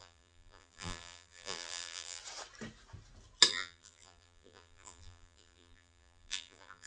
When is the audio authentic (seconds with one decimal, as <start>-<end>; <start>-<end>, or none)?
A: 2.2-3.5